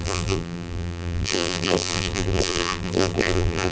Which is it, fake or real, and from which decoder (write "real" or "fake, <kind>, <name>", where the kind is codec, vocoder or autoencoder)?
fake, vocoder, BigVGAN v2